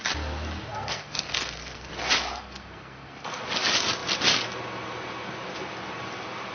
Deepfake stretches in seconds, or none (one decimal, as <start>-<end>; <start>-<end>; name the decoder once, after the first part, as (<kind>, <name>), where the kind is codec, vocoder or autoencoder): 0.7-1.9 (codec, SNAC); 2.3-3.4